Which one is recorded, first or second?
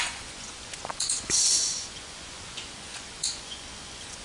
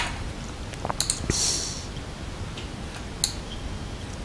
second